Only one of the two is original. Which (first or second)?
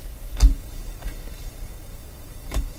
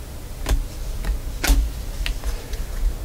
second